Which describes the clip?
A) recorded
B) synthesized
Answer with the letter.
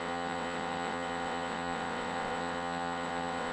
B